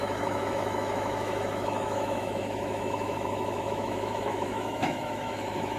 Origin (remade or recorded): remade